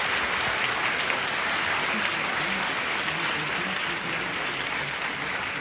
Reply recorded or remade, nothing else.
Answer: recorded